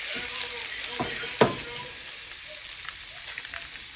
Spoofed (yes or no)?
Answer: no